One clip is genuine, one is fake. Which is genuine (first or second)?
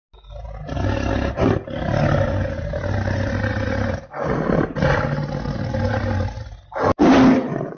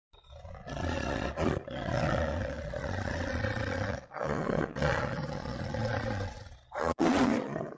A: first